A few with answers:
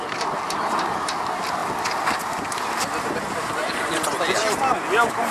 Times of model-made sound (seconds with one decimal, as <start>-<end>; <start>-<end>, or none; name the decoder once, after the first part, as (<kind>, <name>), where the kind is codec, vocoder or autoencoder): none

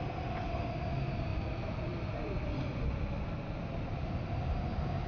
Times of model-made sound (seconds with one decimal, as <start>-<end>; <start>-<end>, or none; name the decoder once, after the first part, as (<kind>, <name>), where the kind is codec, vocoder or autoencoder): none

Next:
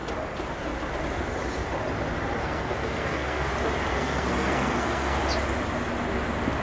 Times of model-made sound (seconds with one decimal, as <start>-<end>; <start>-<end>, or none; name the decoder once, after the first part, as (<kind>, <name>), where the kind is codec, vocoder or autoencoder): 2.4-3.5 (codec, SNAC); 3.9-5.2